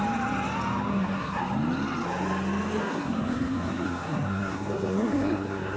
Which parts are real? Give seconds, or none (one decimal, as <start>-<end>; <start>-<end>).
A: 0.0-0.9; 1.4-2.8